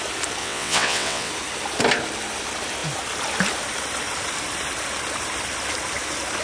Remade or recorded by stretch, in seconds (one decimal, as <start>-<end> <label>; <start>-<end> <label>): 0.0-0.4 recorded; 0.4-1.3 remade; 1.3-6.4 recorded